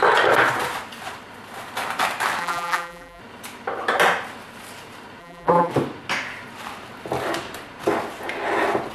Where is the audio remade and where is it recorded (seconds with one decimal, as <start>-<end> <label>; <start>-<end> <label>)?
0.0-2.4 recorded; 2.4-3.2 remade; 3.2-5.2 recorded; 5.2-5.7 remade; 5.7-8.9 recorded